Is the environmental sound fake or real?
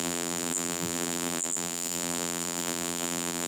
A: fake